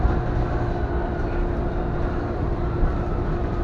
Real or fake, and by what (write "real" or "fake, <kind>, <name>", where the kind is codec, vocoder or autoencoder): real